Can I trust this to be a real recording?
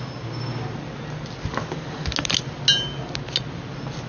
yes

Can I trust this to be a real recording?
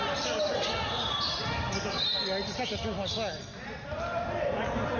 yes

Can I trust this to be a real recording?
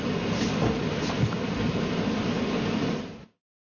yes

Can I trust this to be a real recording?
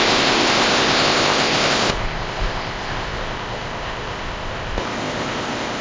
no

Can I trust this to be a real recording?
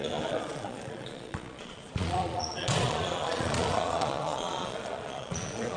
no